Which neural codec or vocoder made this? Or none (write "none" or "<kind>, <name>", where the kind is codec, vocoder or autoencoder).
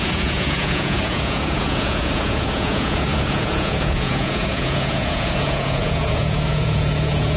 vocoder, Vocos